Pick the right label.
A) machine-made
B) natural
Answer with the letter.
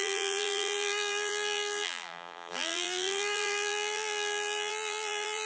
A